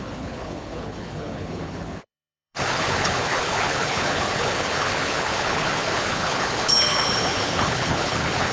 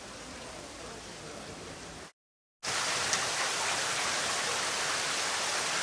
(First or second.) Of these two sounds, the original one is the second